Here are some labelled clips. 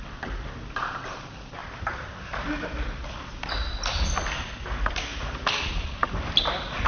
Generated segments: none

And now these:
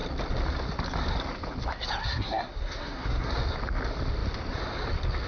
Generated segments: 2.0-3.3 (codec, SNAC)

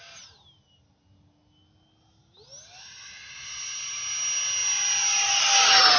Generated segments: none

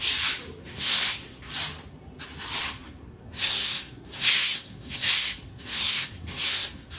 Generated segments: 0.6-1.5 (codec, SNAC); 2.6-7.0